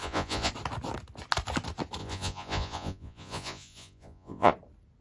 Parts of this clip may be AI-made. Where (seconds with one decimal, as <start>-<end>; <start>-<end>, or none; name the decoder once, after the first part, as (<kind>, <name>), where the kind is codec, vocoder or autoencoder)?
0.0-0.5 (vocoder, Vocos); 2.0-4.5